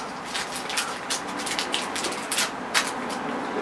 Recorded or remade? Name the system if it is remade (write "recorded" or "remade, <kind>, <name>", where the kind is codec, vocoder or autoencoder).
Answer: recorded